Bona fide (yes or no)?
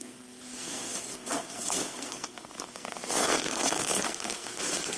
no